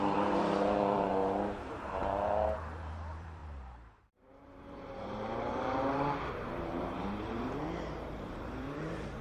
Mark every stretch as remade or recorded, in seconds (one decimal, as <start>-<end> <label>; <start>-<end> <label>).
0.0-1.1 remade; 1.1-1.7 recorded; 1.7-9.2 remade